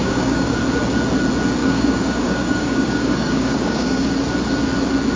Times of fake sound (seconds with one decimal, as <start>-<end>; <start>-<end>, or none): 0.0-0.6; 1.6-4.1